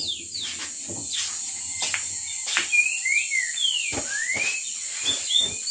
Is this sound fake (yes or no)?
no